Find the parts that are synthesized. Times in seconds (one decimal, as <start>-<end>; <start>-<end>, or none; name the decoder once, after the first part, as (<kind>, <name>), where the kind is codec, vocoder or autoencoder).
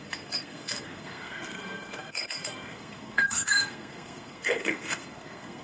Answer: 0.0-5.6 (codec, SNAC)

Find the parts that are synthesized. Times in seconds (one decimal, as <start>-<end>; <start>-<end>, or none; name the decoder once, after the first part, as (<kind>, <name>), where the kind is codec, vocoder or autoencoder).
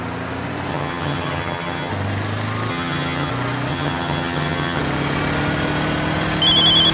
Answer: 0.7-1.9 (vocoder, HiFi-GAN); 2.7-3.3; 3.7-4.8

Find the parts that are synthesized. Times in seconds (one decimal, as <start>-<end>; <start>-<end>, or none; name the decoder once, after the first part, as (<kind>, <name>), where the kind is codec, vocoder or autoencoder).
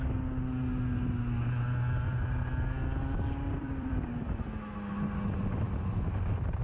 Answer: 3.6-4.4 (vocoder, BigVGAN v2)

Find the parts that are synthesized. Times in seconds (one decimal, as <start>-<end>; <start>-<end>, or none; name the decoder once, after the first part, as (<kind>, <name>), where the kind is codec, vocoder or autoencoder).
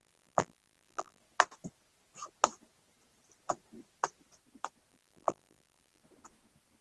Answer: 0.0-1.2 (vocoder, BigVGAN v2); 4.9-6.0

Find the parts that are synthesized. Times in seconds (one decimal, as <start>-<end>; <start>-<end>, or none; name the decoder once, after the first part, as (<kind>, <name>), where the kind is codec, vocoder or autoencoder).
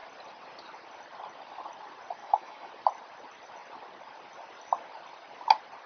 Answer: 2.2-2.7 (autoencoder, DAC-VAE)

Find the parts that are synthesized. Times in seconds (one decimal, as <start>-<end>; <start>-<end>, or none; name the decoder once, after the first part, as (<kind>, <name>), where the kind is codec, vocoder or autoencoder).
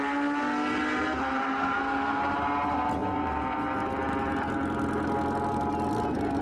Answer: 1.4-2.2 (codec, SNAC)